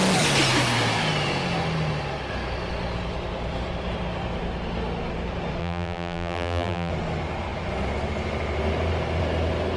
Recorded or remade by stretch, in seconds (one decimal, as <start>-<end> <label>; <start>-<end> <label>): 0.0-5.6 recorded; 5.6-6.9 remade; 6.9-9.8 recorded